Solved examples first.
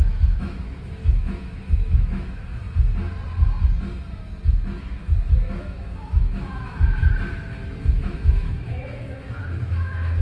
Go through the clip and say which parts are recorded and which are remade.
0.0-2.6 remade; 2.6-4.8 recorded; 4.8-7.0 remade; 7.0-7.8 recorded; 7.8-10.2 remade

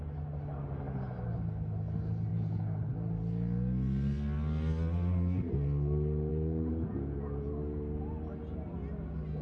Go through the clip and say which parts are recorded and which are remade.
0.0-2.3 recorded; 2.3-2.9 remade; 2.9-6.3 recorded; 6.3-7.5 remade; 7.5-9.4 recorded